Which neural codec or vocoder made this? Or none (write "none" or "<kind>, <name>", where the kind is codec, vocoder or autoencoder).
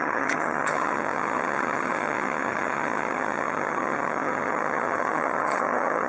vocoder, HiFi-GAN